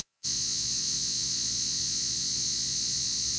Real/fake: fake